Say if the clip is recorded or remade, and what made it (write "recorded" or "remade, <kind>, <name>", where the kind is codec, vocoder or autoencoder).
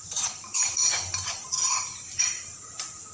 remade, vocoder, BigVGAN v2